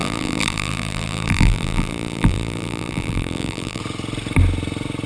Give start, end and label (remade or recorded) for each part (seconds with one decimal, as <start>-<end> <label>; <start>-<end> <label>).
0.0-3.8 remade; 3.8-5.1 recorded

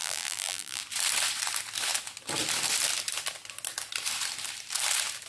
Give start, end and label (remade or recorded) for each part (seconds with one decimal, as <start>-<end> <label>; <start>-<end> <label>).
0.0-0.8 remade; 0.8-5.3 recorded